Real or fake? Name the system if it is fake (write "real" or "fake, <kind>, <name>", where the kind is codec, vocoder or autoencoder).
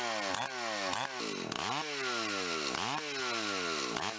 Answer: real